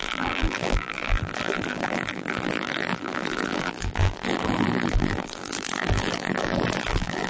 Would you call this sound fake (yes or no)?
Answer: yes